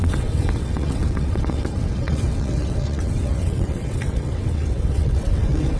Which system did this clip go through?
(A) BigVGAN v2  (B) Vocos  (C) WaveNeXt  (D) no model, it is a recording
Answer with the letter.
C